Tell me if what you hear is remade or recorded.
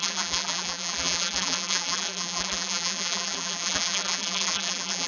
remade